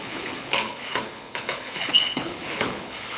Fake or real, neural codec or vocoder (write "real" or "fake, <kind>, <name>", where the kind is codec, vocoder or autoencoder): fake, codec, HILCodec